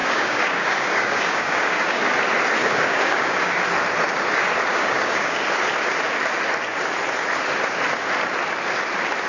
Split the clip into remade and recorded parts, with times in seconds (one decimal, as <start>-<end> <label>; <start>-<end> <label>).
0.0-2.0 remade; 2.0-2.6 recorded; 2.6-3.6 remade; 3.6-4.7 recorded; 4.7-5.4 remade; 5.4-9.3 recorded